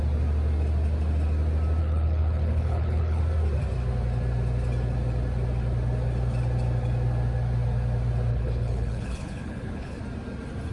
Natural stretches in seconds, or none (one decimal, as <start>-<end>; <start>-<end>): 0.0-1.8; 3.2-8.3; 10.0-10.7